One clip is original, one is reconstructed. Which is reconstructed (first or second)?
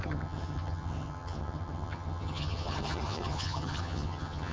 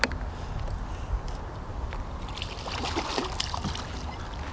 first